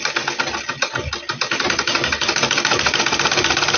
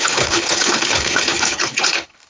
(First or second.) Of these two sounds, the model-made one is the second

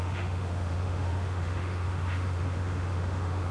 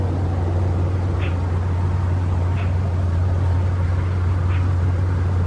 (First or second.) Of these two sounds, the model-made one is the first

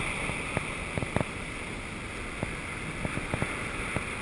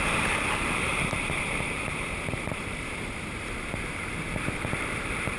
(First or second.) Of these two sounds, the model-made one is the second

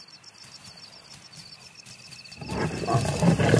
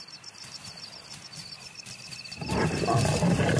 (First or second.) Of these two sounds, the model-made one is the second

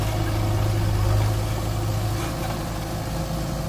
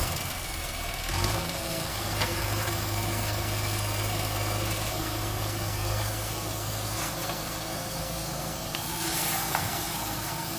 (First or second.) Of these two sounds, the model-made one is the second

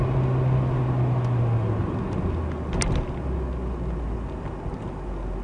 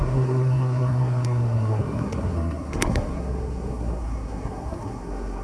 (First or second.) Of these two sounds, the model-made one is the second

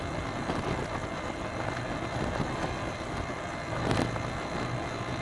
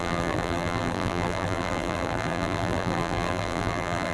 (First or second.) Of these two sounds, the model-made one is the second